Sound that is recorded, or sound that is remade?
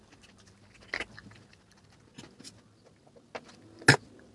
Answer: recorded